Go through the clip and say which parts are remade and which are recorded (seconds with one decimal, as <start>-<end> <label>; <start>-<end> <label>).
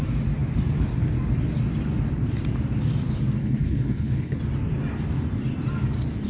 0.0-3.4 recorded; 3.4-4.4 remade; 4.4-6.3 recorded